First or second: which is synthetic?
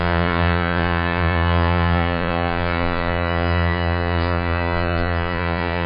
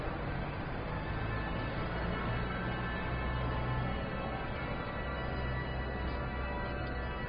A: first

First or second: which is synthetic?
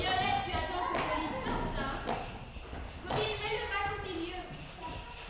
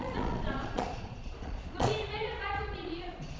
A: second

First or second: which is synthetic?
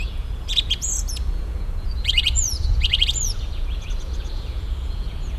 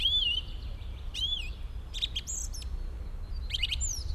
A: first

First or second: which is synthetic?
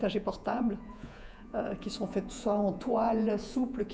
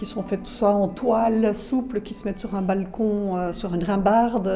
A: first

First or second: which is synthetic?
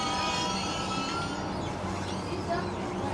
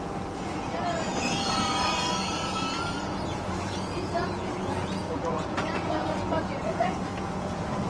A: second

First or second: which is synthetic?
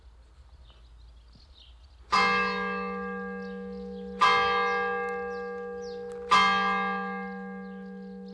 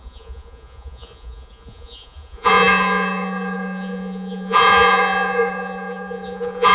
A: second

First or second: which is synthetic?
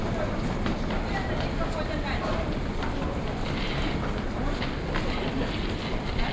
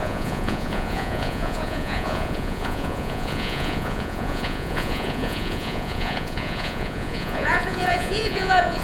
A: second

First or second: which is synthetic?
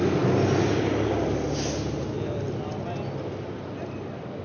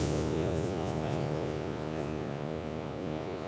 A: second